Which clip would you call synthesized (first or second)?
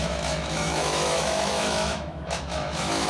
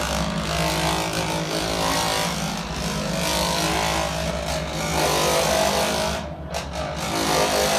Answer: first